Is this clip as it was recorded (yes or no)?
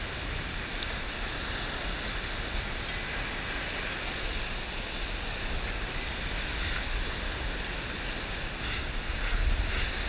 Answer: yes